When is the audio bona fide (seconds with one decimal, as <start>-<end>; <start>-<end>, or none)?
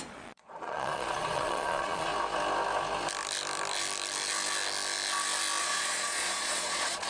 2.1-5.6